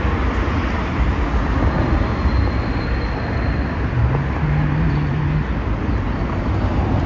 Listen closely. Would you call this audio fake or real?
real